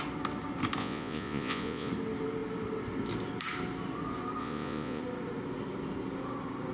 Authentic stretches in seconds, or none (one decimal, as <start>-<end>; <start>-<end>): 0.0-0.8; 1.9-4.4; 5.0-6.7